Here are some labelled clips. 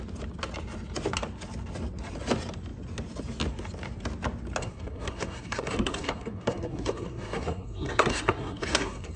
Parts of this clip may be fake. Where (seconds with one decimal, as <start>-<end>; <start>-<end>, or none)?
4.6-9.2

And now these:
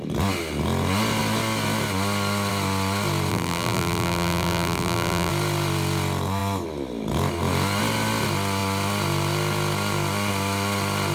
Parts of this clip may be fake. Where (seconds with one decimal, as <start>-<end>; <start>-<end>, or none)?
3.3-5.3

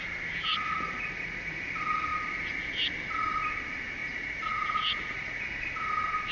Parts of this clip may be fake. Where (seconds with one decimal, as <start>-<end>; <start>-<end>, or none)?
0.5-1.6; 4.0-5.6

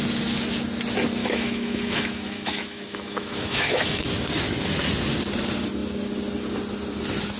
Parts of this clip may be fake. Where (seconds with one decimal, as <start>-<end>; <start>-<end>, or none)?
1.2-4.1